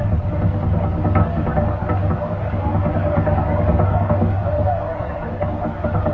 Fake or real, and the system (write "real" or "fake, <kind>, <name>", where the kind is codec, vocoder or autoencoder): fake, codec, DAC